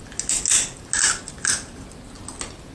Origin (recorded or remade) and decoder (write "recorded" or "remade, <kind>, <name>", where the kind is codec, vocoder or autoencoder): recorded